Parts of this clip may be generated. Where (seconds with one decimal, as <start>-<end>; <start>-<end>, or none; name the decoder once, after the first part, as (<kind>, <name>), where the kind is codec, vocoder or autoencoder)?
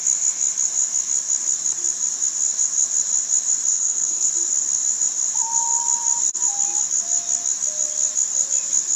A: 3.7-4.3 (codec, SNAC)